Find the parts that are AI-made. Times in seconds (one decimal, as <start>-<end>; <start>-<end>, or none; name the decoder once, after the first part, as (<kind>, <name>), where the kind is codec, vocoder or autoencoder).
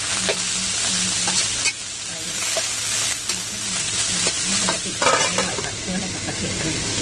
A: none